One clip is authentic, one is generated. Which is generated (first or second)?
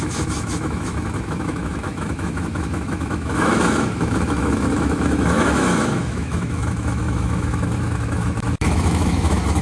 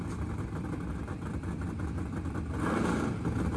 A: first